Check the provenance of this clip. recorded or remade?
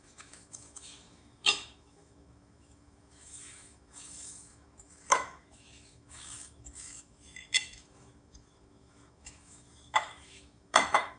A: remade